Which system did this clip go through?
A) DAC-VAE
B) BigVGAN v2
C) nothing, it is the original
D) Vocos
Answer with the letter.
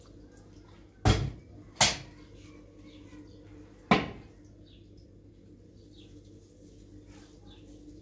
C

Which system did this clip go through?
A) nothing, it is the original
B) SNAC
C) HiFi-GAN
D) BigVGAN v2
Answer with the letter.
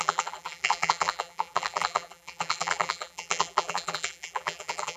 D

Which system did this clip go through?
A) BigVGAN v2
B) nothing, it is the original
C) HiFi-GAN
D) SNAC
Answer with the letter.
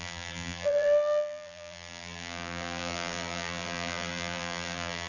A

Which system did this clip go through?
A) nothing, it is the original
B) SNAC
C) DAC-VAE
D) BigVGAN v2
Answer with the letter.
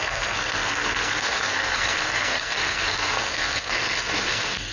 B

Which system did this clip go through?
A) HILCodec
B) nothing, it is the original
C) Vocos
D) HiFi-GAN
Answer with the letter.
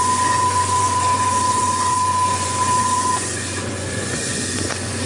C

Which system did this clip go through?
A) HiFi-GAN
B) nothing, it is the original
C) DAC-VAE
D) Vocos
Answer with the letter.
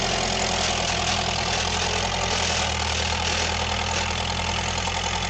B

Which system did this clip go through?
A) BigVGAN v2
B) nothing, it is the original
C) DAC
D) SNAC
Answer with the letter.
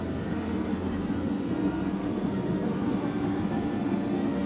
D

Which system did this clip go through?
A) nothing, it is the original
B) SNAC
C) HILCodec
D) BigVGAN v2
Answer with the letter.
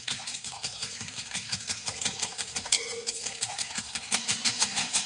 B